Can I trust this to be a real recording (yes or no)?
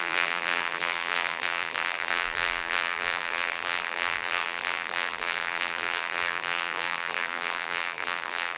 no